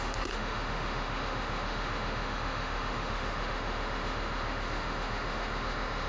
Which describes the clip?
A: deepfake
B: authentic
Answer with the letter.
A